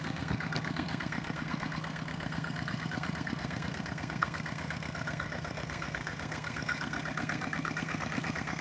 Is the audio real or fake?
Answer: fake